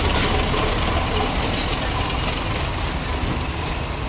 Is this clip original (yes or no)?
yes